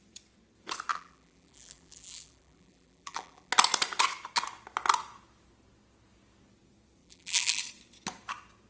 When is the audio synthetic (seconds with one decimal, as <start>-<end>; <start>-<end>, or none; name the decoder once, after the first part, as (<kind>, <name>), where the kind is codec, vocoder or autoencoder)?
0.9-3.5 (vocoder, BigVGAN v2); 7.0-7.6